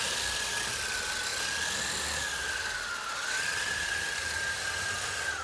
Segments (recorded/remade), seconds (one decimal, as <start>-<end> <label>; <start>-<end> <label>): 0.0-5.4 recorded